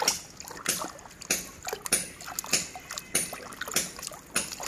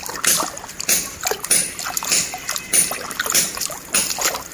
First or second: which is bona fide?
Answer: first